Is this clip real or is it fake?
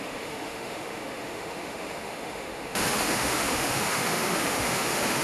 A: fake